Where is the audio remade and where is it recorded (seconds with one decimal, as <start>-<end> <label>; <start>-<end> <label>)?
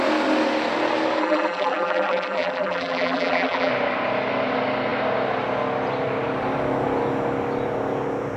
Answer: 0.0-1.2 recorded; 1.2-3.7 remade; 3.7-8.4 recorded